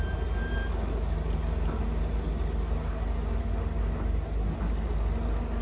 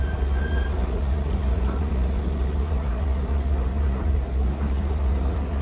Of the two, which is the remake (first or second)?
second